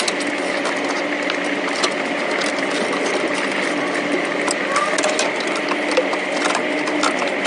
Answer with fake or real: real